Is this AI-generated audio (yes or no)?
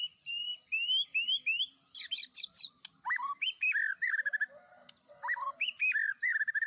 no